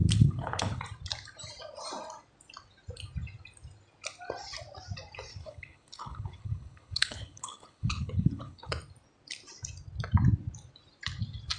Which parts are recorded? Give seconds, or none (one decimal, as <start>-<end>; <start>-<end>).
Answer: 0.8-5.3; 8.7-11.6